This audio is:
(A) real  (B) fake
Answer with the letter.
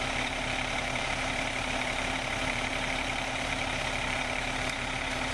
B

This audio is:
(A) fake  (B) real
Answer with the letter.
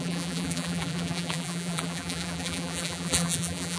A